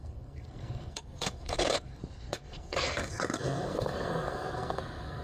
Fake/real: fake